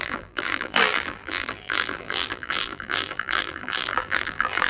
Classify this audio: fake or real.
fake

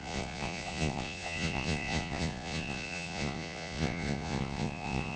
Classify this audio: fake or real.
fake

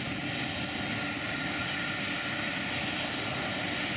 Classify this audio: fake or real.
real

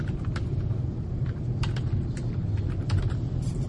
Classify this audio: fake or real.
real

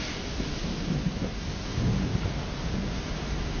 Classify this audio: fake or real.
real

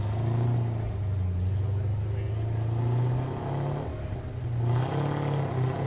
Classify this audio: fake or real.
real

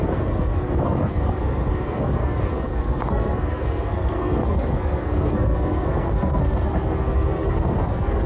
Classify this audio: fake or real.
fake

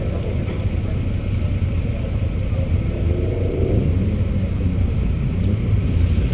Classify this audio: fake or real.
fake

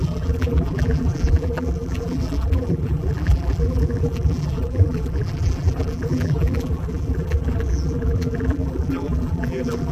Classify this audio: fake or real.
fake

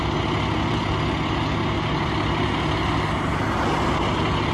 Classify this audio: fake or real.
real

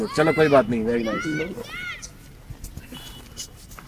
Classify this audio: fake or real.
real